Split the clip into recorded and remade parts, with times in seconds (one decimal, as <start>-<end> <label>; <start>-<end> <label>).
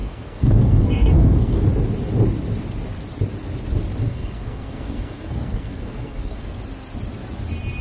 0.0-1.6 remade; 1.6-4.0 recorded; 4.0-6.6 remade; 6.6-7.8 recorded